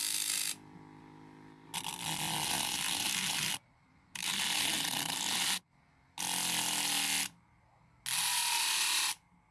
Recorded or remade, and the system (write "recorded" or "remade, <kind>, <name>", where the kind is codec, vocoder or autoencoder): recorded